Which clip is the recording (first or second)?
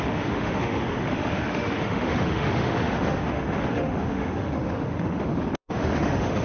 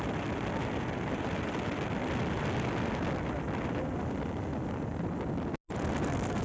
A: second